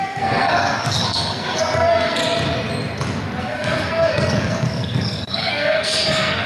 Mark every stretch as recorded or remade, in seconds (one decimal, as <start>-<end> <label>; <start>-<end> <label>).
0.0-2.2 remade; 2.2-3.4 recorded; 3.4-6.5 remade